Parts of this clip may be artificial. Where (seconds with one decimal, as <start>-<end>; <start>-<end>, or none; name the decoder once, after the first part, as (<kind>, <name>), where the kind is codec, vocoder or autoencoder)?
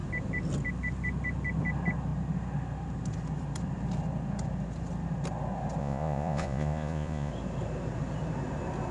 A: 5.8-7.3 (vocoder, Vocos)